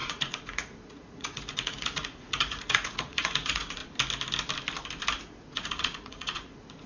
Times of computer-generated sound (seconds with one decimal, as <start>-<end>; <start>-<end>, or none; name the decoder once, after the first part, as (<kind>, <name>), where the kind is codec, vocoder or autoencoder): 0.0-3.8 (vocoder, Vocos); 5.2-6.9